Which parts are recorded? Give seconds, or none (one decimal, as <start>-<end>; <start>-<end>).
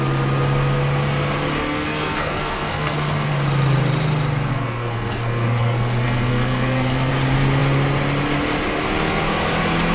0.0-1.6; 3.3-4.5; 7.1-9.9